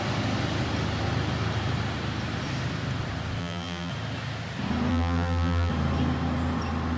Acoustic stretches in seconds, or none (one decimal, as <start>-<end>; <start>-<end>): 0.0-3.4; 3.9-4.9; 5.7-7.0